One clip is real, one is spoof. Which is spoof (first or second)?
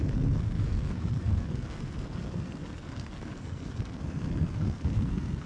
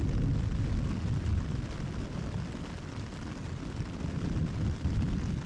first